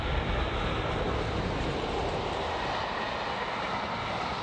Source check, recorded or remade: recorded